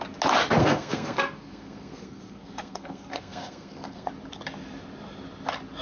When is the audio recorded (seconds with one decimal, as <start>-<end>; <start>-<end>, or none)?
0.0-0.6; 4.1-5.8